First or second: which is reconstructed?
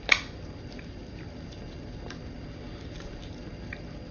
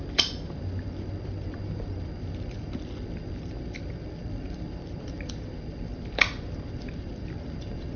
second